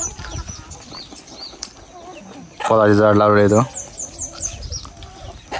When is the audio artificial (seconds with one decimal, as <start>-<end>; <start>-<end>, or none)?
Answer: none